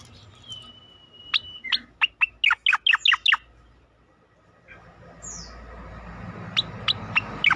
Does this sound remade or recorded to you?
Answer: recorded